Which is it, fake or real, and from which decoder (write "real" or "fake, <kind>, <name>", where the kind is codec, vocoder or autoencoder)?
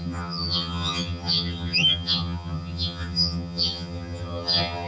fake, vocoder, HiFi-GAN